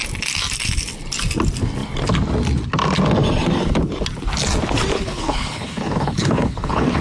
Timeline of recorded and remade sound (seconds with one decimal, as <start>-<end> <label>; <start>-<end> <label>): 0.0-4.9 recorded; 4.9-7.0 remade